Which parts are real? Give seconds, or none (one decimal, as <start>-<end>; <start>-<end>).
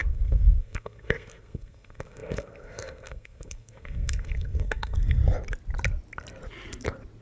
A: 5.2-7.2